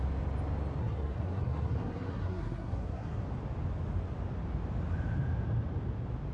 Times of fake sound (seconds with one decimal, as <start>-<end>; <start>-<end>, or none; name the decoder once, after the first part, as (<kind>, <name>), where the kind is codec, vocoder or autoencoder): 0.8-3.2 (codec, SNAC)